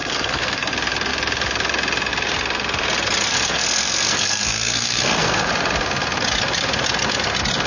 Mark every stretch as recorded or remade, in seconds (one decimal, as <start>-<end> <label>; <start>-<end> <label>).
0.0-0.7 remade; 0.7-3.3 recorded; 3.3-5.5 remade; 5.5-7.7 recorded